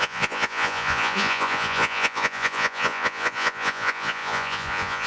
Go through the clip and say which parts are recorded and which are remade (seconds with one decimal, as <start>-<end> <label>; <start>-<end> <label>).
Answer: 0.0-5.1 remade